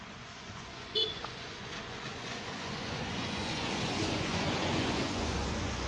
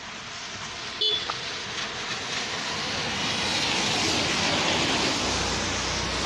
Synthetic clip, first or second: first